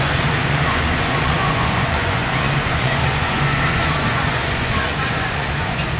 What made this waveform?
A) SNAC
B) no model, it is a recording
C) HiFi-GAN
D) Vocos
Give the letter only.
D